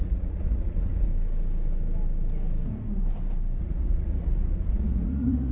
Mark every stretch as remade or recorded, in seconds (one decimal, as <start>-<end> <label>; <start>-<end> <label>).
0.0-1.1 remade; 1.1-3.6 recorded; 3.6-5.5 remade